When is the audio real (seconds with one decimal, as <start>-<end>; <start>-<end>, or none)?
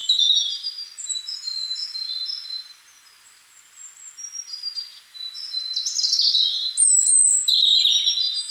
0.0-8.5